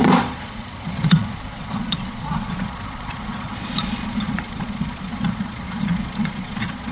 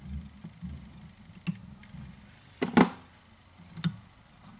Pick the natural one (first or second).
second